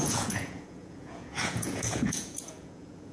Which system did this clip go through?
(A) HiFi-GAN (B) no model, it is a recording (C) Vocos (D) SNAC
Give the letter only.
C